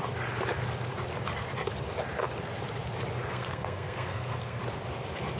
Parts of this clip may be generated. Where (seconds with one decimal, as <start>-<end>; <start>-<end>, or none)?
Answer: 3.3-4.6